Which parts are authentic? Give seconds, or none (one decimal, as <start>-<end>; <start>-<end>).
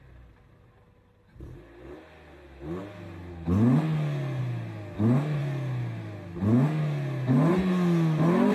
0.0-8.5